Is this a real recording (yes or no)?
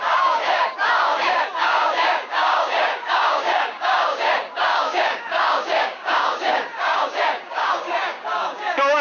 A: no